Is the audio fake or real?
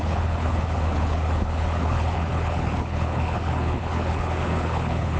fake